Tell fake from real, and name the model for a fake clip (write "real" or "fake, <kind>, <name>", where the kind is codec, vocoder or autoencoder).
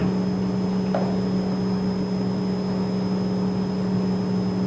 real